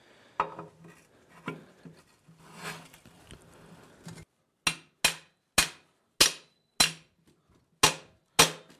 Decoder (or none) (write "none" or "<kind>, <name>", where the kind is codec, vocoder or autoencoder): none